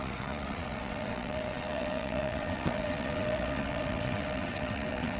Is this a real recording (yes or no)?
no